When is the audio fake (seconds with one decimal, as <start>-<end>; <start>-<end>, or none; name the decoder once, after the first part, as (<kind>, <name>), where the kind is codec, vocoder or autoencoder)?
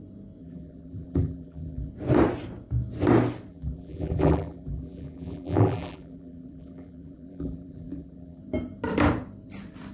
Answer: 0.4-1.9 (vocoder, BigVGAN v2); 3.5-8.4